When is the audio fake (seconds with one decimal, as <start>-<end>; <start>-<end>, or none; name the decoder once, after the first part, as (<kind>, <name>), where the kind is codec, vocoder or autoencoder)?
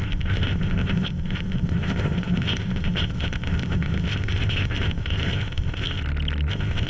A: 0.0-6.0 (codec, ZipCodec); 6.5-6.9